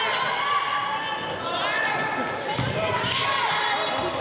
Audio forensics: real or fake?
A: real